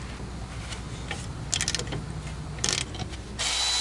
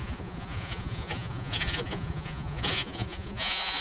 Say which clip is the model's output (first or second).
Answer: second